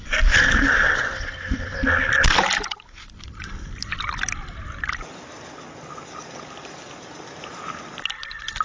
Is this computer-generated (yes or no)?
no